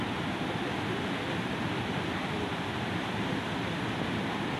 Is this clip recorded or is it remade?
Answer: recorded